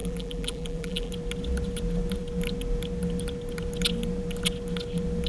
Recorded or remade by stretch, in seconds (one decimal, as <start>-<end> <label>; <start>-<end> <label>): 0.0-1.1 remade; 1.1-5.3 recorded